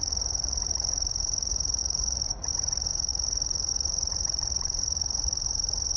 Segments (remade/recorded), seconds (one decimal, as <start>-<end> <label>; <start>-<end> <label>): 0.0-6.0 remade